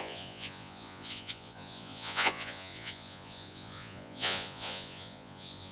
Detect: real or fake fake